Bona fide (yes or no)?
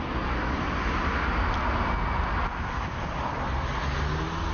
yes